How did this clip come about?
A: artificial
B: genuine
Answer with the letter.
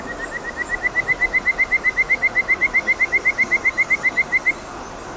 B